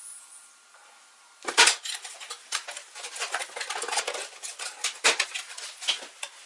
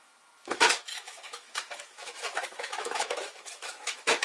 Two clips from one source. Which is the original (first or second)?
first